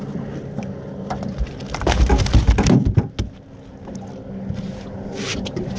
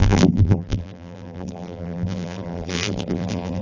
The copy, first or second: second